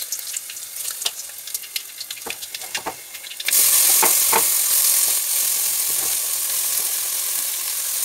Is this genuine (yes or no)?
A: yes